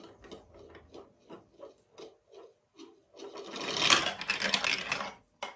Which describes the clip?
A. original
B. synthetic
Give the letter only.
A